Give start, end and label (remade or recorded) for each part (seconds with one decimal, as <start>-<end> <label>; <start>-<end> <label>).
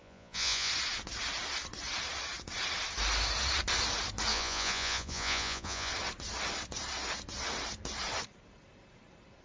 0.0-0.7 remade; 0.7-4.3 recorded; 4.3-5.9 remade; 5.9-9.4 recorded